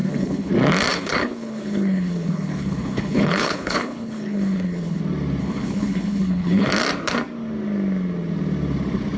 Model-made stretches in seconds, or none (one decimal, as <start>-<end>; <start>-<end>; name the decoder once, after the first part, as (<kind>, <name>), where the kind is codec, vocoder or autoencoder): 0.0-0.5 (codec, HILCodec); 0.9-5.0; 5.4-6.7